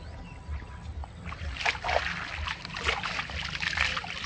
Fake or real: real